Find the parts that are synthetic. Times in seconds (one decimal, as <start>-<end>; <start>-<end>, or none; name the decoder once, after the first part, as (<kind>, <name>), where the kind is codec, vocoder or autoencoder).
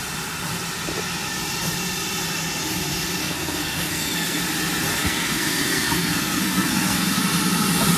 3.2-4.4 (codec, SNAC); 4.9-7.2